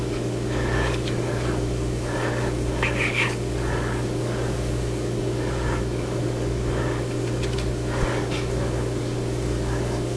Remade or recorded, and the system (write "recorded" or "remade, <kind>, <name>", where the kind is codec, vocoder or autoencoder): remade, codec, DAC